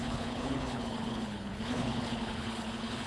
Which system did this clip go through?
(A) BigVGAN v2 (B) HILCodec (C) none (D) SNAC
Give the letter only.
B